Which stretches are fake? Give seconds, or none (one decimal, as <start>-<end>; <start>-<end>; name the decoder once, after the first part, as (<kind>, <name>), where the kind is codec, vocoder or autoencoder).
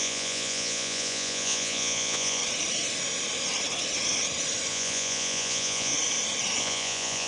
0.0-2.4 (vocoder, Vocos); 4.7-5.9; 6.6-7.3